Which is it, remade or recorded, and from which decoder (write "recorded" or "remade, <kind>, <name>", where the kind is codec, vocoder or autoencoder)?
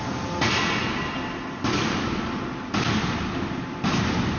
recorded